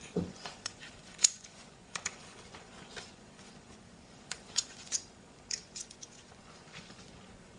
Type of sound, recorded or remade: remade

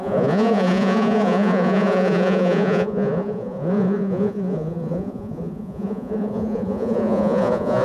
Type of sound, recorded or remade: remade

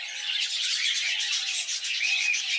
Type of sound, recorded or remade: remade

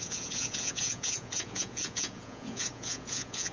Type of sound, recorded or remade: remade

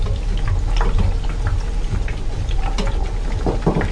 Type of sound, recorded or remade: recorded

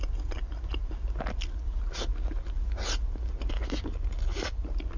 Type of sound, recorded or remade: recorded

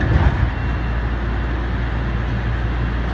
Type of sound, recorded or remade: recorded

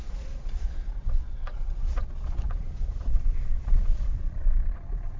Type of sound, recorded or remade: remade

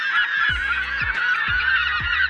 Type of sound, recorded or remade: remade